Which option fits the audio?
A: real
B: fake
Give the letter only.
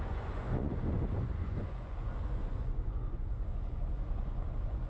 B